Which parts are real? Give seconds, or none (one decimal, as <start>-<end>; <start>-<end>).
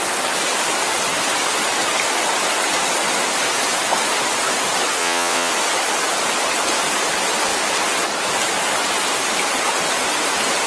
0.0-5.0; 5.5-10.7